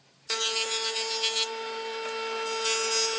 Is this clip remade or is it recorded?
recorded